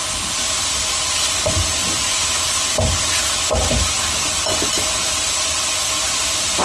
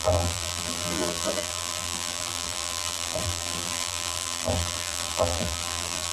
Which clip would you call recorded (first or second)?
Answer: first